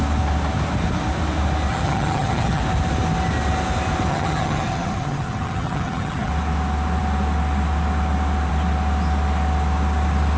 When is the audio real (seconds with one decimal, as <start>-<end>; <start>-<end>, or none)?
0.0-1.7; 2.6-4.1; 6.3-10.4